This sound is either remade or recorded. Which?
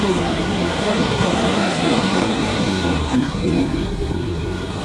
remade